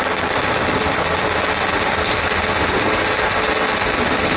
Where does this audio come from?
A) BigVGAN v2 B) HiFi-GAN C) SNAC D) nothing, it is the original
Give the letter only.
D